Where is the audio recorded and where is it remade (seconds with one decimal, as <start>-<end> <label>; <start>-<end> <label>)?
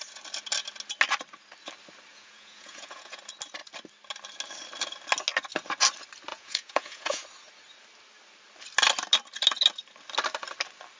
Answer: 0.0-2.1 recorded; 2.1-3.2 remade; 3.2-6.3 recorded; 6.3-7.2 remade; 7.2-11.0 recorded